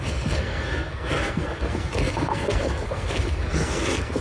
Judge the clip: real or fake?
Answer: fake